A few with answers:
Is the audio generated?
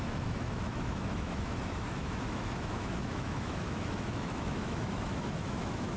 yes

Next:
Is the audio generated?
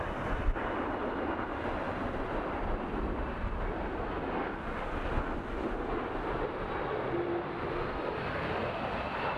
no